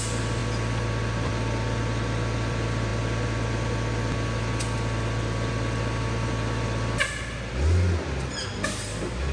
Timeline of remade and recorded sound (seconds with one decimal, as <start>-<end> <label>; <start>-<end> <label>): 0.0-9.3 recorded